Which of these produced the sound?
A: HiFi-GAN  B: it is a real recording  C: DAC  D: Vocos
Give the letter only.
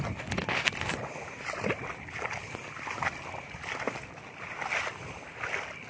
B